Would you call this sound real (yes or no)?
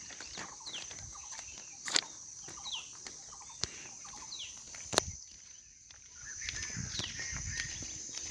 yes